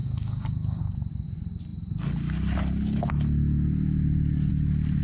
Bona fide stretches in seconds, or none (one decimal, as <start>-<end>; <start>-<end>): 0.8-5.0